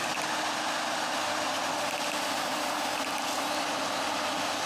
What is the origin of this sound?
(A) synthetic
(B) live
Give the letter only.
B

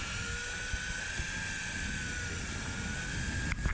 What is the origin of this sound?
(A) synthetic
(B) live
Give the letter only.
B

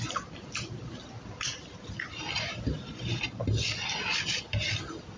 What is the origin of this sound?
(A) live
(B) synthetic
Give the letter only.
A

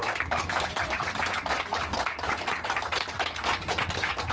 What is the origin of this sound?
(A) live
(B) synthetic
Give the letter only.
B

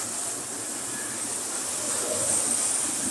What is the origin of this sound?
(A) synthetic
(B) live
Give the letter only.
B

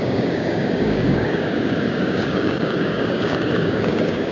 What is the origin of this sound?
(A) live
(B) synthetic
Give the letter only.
B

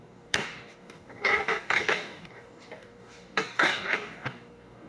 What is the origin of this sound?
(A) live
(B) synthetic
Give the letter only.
B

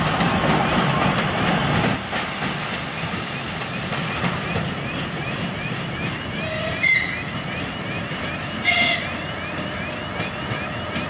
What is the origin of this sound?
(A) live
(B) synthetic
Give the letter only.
A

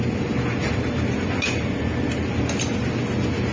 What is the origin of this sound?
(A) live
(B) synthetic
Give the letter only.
A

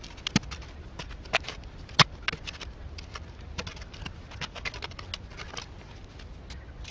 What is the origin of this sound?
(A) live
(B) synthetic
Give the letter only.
A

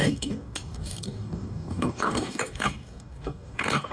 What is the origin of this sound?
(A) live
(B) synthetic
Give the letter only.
B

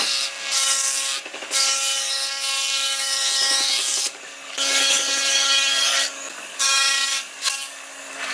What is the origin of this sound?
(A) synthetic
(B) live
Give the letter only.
A